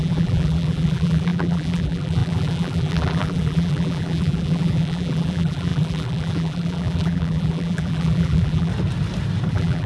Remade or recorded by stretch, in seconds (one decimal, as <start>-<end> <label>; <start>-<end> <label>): 0.0-8.7 remade; 8.7-9.5 recorded; 9.5-9.9 remade